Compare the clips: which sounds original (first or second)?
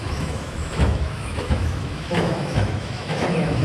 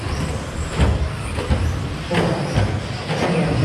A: second